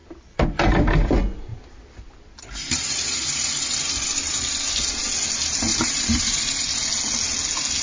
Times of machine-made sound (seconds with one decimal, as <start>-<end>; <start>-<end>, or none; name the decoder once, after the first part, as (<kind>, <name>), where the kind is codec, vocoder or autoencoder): 0.0-0.7 (vocoder, BigVGAN v2); 5.7-6.4